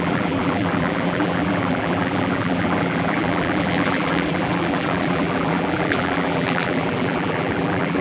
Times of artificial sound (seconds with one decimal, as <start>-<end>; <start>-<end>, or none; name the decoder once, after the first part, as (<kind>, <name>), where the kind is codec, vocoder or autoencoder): 0.0-8.0 (vocoder, BigVGAN v2)